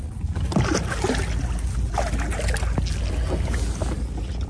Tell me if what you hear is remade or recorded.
recorded